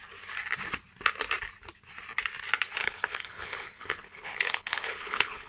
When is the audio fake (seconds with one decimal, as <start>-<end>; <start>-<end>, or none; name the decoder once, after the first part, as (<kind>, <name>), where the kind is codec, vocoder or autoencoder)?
2.8-5.5 (codec, HILCodec)